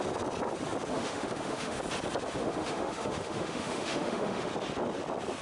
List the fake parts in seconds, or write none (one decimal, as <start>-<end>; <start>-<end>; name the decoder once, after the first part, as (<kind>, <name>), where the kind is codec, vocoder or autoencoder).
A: 0.9-1.8 (autoencoder, DAC-VAE); 2.4-4.5